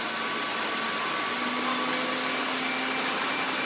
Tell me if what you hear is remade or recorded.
recorded